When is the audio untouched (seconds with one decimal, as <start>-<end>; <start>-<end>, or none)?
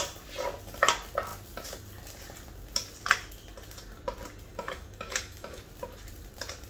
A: 0.0-4.5; 5.6-6.7